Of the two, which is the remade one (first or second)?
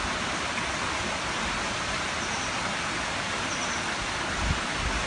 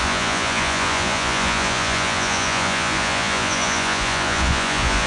second